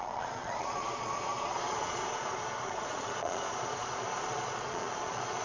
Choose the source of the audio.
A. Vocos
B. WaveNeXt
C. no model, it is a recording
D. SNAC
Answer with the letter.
A